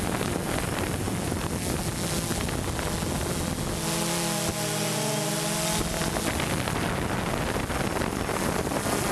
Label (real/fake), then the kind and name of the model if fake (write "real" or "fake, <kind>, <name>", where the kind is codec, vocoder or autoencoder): real